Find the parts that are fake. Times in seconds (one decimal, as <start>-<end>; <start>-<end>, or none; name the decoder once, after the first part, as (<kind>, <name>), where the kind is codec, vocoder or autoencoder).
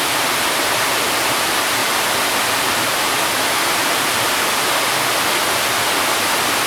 none